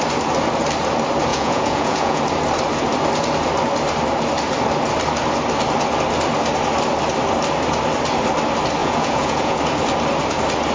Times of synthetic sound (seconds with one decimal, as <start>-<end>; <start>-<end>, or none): 1.3-2.2; 8.8-9.6